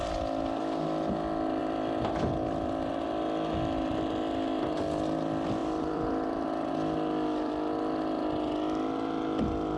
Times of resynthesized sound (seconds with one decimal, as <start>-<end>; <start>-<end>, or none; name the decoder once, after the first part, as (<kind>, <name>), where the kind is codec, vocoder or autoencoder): 1.6-2.9 (vocoder, BigVGAN v2); 5.6-6.7

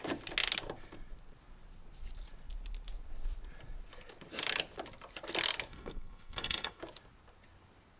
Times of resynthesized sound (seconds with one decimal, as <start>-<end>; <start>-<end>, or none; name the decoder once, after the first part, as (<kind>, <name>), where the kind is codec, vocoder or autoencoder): 5.7-6.8 (codec, SNAC)

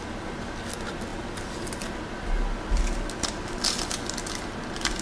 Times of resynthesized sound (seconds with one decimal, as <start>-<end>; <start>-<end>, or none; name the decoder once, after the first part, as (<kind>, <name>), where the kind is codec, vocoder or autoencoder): none

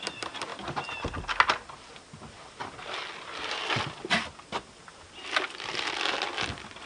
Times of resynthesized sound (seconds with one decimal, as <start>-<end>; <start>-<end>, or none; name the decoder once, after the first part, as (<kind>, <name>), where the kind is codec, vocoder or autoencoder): none